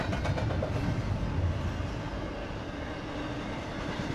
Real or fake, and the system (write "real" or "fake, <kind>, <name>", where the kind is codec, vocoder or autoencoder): real